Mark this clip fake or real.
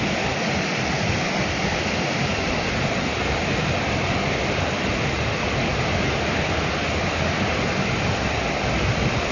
real